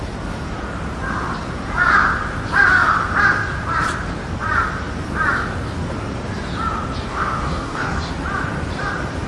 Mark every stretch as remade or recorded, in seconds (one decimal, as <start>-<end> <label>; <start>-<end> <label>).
0.0-7.1 recorded; 7.1-8.1 remade; 8.1-9.3 recorded